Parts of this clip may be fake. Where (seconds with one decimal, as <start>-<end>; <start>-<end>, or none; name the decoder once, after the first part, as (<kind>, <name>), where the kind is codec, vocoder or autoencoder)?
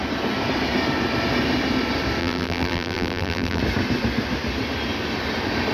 2.2-3.6 (vocoder, BigVGAN v2)